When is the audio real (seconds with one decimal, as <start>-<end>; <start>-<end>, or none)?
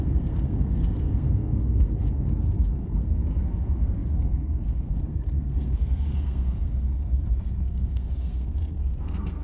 none